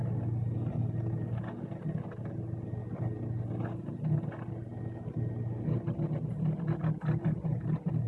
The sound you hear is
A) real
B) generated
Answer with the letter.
A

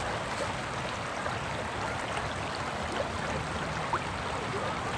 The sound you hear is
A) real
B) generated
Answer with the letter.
A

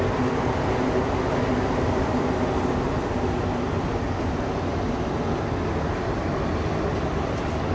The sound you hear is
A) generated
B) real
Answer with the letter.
B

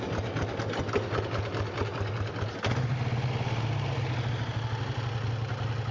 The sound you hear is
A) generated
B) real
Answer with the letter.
B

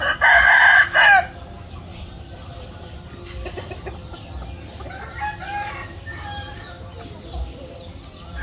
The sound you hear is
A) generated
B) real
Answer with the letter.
B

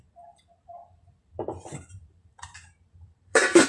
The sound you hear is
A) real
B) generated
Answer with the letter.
B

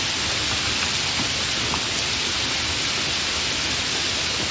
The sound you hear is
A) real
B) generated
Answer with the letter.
A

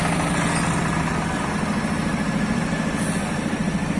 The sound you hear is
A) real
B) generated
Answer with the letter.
A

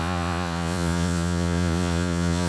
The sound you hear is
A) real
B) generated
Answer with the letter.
B